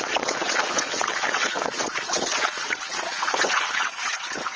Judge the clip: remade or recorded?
remade